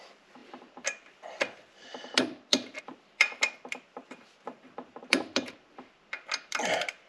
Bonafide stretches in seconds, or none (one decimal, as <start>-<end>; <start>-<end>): none